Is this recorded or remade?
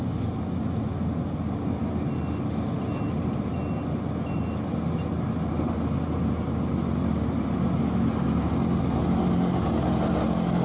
recorded